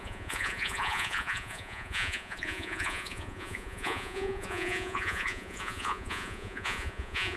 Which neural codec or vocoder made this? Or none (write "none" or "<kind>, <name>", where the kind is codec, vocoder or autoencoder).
vocoder, Vocos